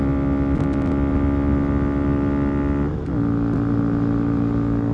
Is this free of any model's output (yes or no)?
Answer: yes